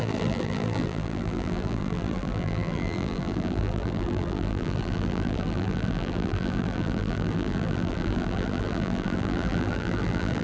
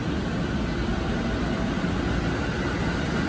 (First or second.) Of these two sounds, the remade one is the first